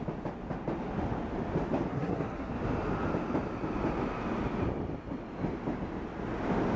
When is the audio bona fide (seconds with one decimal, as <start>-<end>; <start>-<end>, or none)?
0.0-1.9; 2.5-6.8